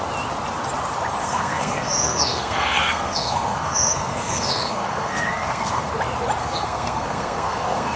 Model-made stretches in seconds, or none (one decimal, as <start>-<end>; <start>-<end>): 1.2-5.9; 6.4-8.0